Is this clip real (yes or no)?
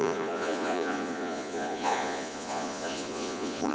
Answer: no